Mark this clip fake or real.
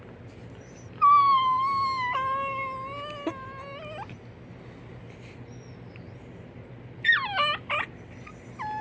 real